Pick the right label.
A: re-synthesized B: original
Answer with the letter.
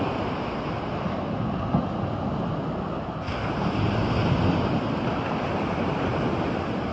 B